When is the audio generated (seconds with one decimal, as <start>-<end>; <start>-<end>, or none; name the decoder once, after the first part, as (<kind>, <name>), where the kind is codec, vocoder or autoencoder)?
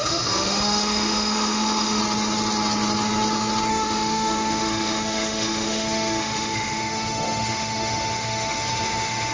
0.0-2.0 (autoencoder, DAC-VAE); 3.7-9.3